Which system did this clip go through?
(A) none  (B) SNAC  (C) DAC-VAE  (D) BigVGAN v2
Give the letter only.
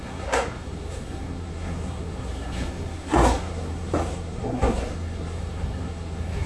B